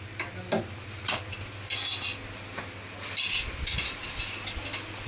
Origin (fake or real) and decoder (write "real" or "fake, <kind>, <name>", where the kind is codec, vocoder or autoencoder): real